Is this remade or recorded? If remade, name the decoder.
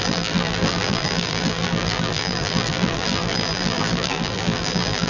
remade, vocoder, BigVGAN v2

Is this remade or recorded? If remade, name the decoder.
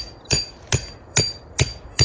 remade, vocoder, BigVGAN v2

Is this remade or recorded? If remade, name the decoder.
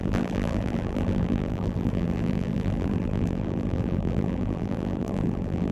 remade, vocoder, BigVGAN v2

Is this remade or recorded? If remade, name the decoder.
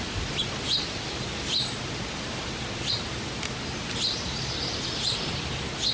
remade, vocoder, BigVGAN v2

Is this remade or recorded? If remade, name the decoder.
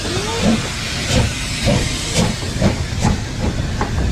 recorded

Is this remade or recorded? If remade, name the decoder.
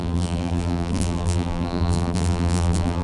remade, vocoder, BigVGAN v2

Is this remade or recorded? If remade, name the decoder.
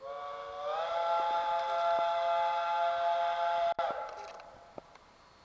recorded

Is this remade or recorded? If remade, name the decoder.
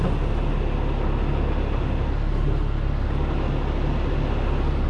recorded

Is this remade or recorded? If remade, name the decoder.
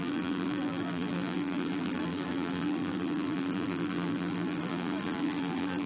remade, vocoder, BigVGAN v2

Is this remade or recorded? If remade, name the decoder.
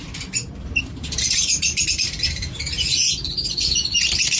remade, vocoder, BigVGAN v2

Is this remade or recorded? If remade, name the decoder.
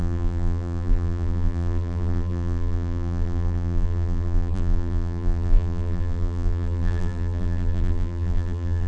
remade, vocoder, BigVGAN v2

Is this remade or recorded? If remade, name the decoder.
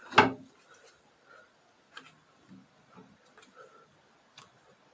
recorded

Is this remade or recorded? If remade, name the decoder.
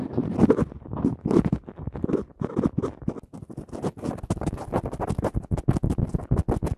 recorded